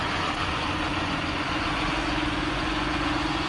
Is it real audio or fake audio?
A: fake